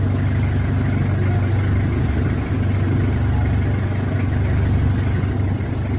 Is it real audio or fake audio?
real